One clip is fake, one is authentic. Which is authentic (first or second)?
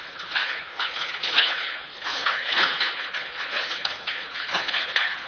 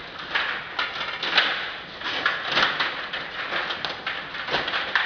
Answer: second